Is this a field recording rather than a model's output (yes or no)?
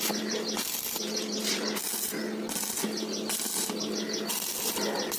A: yes